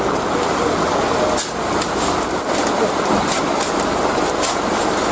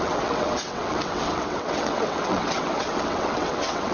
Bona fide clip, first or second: first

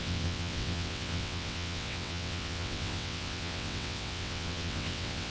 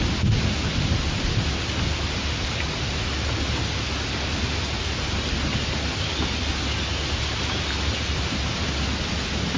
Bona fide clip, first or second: second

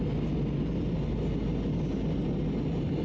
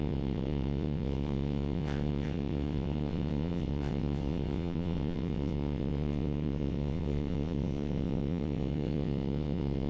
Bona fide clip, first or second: first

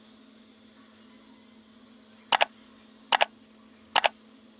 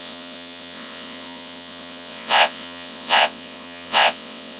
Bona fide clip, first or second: first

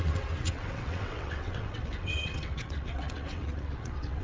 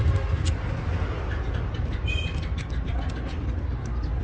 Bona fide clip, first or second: second